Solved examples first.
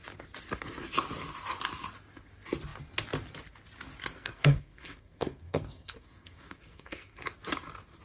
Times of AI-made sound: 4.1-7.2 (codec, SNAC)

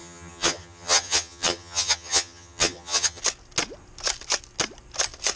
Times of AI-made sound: 0.0-3.2 (vocoder, HiFi-GAN)

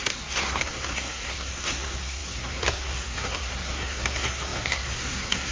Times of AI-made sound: 0.0-5.5 (codec, SNAC)

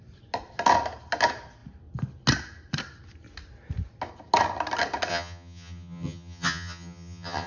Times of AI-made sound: 5.1-7.5 (vocoder, HiFi-GAN)